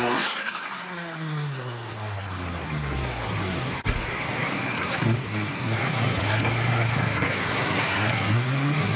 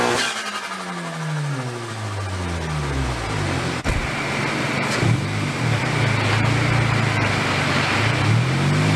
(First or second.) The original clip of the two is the second